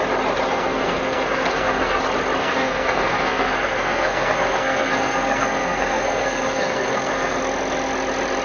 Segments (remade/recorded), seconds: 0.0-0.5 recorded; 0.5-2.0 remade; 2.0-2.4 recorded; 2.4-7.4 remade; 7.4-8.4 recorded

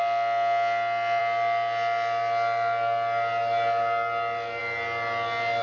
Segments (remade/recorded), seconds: 0.0-5.6 recorded